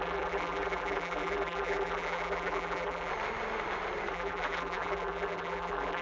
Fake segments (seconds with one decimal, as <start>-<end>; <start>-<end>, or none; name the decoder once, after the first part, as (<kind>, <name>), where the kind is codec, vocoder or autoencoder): 0.0-3.1 (vocoder, BigVGAN v2); 4.1-6.0